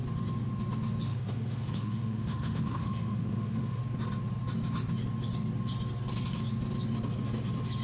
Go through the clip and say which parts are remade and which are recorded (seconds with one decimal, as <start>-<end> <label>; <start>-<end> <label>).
0.0-1.1 recorded; 1.1-3.8 remade; 3.8-7.8 recorded